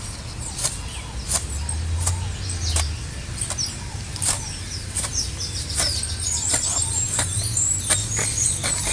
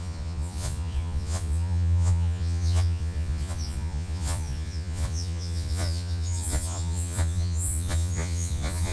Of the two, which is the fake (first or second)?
second